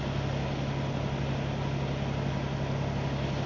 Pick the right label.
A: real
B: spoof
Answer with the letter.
A